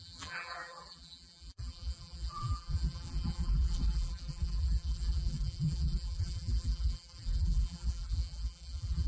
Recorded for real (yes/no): no